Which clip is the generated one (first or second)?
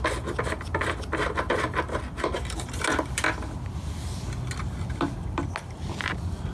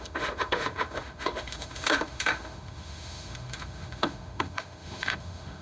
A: second